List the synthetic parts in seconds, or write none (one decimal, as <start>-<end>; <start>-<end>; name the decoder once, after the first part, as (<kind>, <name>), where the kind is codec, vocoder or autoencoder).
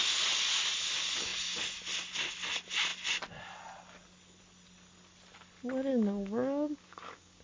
5.9-7.4 (codec, DAC)